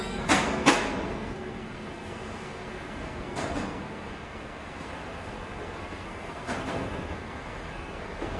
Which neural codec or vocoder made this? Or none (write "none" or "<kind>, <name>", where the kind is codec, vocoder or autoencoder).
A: codec, SNAC